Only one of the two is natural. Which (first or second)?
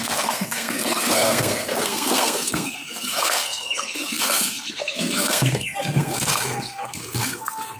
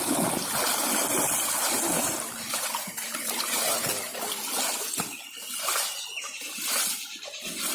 second